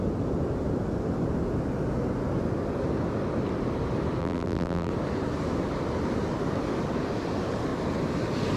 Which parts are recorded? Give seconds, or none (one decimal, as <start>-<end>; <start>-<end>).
0.0-4.2; 4.9-8.6